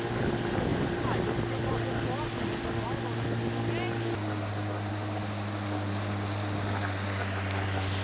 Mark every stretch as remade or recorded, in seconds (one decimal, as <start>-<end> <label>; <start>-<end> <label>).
0.0-8.0 recorded